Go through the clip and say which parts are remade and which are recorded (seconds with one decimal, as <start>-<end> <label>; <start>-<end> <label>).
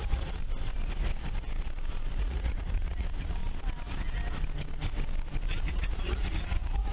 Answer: 0.0-0.4 remade; 0.4-2.2 recorded; 2.2-3.4 remade; 3.4-5.7 recorded; 5.7-6.9 remade